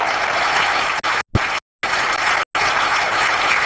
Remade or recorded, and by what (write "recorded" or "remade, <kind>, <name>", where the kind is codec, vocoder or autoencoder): recorded